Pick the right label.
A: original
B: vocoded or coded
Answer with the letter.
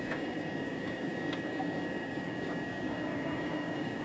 B